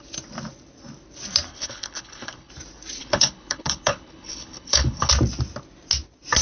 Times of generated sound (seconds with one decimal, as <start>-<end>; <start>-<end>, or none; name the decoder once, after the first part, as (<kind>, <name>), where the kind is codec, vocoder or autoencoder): 1.5-2.5 (codec, HILCodec); 3.0-5.1